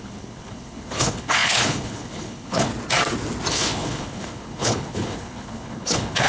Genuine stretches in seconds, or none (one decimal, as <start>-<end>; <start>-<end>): 2.7-3.5